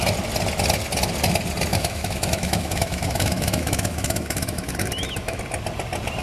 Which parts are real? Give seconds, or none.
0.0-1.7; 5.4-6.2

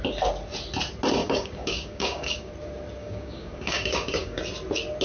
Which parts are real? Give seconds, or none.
0.0-1.2; 2.5-3.0; 4.4-5.0

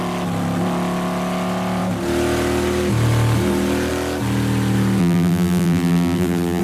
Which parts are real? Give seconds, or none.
0.0-5.0